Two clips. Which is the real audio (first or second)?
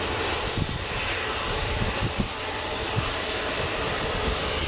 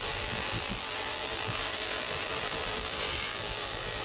first